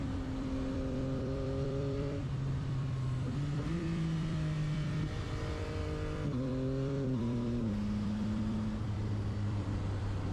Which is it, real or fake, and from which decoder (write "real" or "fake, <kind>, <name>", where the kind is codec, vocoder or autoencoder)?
fake, vocoder, BigVGAN v2